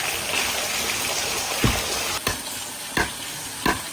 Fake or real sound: real